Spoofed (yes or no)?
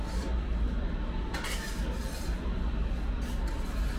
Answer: no